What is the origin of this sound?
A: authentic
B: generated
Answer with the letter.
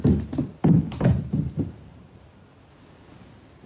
A